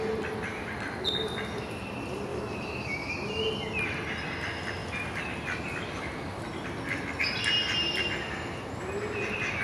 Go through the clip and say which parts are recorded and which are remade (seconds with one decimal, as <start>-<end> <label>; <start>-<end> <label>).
0.0-2.3 recorded; 2.3-3.1 remade; 3.1-9.6 recorded